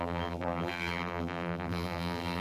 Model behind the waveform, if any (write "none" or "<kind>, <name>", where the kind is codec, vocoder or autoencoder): vocoder, BigVGAN v2